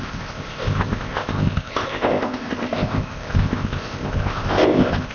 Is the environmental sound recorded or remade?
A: remade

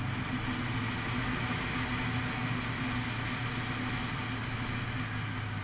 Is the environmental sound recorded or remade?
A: recorded